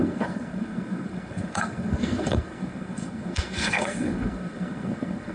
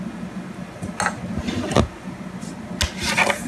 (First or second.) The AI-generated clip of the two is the first